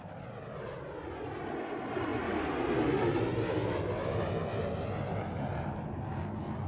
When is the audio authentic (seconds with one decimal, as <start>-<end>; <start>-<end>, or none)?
0.0-6.7